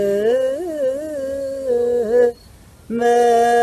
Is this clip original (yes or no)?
yes